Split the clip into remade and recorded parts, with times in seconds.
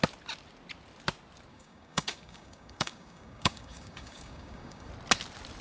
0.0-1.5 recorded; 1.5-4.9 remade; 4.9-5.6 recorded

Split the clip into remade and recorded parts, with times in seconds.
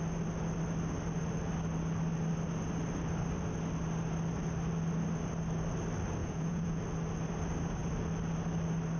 0.0-6.2 recorded; 6.2-6.8 remade; 6.8-9.0 recorded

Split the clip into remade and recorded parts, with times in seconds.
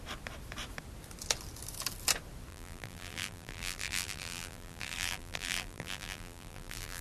0.0-2.5 recorded; 2.5-7.0 remade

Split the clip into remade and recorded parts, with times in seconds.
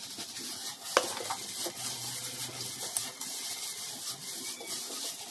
0.0-5.3 recorded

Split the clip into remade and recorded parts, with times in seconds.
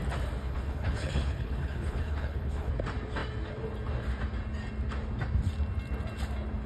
0.0-0.4 recorded; 0.4-2.7 remade; 2.7-6.7 recorded